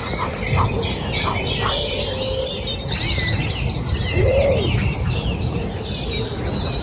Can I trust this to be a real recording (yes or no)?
yes